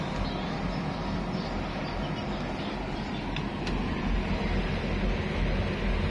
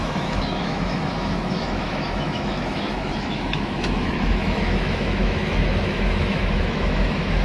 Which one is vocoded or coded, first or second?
second